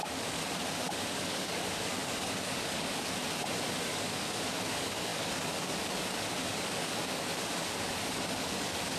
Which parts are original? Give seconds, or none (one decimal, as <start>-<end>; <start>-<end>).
3.2-3.9